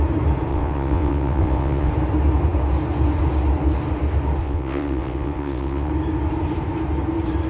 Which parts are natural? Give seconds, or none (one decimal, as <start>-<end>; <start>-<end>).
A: 0.0-0.5; 1.9-4.4; 5.9-7.5